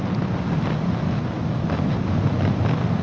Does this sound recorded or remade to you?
recorded